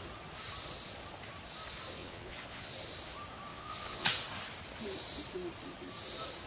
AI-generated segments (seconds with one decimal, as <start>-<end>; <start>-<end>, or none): 2.0-2.7; 3.5-4.1

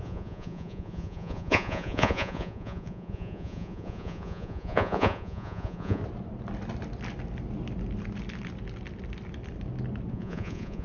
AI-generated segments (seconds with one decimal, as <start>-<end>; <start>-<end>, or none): 0.0-6.0; 10.1-10.8

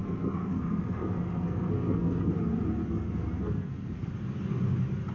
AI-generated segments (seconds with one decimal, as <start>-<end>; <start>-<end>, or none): 0.0-2.3; 2.8-4.1

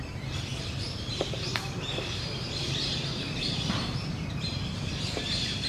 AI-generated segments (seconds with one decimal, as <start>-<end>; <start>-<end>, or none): 0.0-5.7

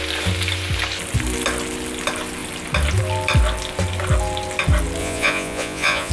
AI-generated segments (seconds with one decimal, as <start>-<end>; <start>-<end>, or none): 5.0-6.1